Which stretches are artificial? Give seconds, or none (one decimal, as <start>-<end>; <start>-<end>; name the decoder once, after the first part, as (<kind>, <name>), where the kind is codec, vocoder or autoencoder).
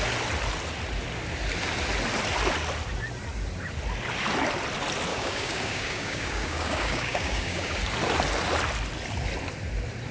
5.1-7.8 (codec, DAC)